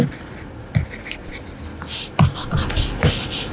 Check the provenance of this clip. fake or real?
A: real